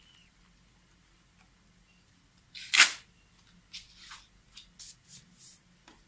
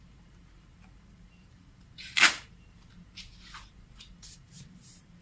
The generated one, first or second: second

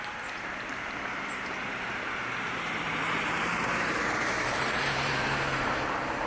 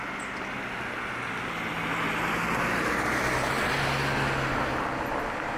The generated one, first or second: first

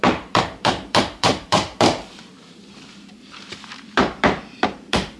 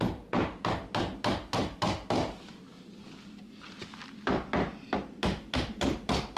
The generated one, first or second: first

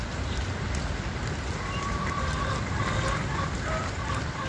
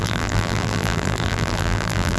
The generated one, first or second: second